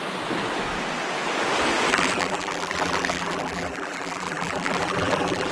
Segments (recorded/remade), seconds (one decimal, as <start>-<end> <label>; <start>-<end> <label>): 0.0-1.9 recorded; 1.9-5.5 remade